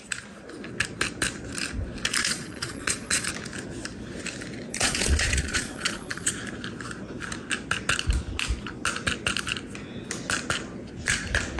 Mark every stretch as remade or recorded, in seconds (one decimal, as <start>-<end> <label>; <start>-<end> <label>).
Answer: 0.0-2.2 recorded; 2.2-3.3 remade; 3.3-4.7 recorded; 4.7-6.3 remade; 6.3-11.6 recorded